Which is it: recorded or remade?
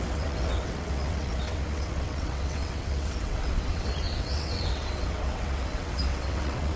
remade